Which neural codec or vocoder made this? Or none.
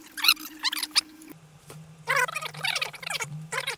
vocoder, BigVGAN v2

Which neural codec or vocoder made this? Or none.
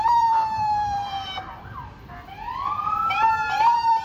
vocoder, BigVGAN v2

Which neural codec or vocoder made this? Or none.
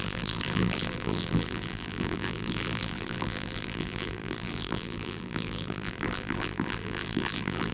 vocoder, BigVGAN v2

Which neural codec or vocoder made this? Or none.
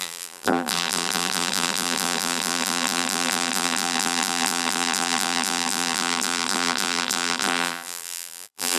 vocoder, BigVGAN v2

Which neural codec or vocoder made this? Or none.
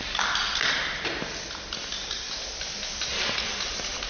vocoder, BigVGAN v2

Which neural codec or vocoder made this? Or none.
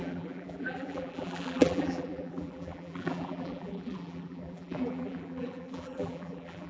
vocoder, BigVGAN v2